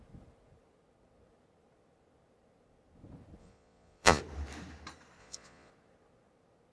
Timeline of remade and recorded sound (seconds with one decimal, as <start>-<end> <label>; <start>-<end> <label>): 0.0-3.4 recorded; 3.4-4.2 remade; 4.2-5.2 recorded; 5.2-5.7 remade; 5.7-6.7 recorded

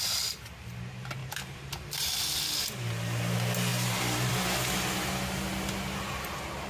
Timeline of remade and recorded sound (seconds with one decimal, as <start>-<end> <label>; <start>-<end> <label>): 0.0-1.2 recorded; 1.2-2.1 remade; 2.1-3.7 recorded; 3.7-4.3 remade; 4.3-6.7 recorded